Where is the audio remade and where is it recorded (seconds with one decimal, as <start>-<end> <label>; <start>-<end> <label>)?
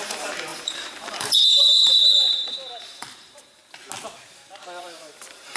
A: 0.0-2.0 remade; 2.0-2.8 recorded; 2.8-3.6 remade; 3.6-4.8 recorded; 4.8-5.6 remade